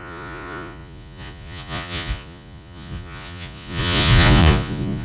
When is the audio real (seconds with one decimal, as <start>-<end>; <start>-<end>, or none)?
none